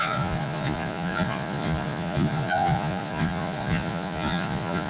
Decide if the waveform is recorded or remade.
remade